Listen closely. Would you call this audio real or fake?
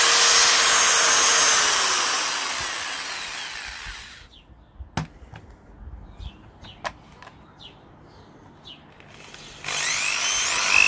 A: real